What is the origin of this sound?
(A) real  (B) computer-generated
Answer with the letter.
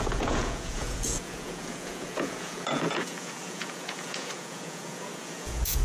B